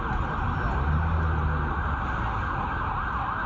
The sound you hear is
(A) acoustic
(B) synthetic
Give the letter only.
A